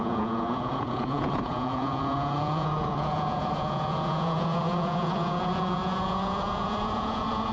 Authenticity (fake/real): fake